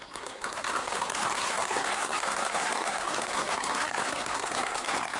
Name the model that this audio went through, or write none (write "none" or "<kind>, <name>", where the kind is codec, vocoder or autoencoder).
codec, SNAC